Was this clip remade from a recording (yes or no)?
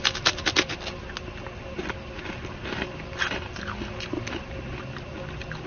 no